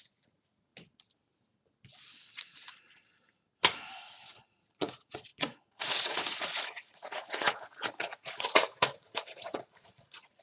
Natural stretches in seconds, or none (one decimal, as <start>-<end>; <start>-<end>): 0.7-4.0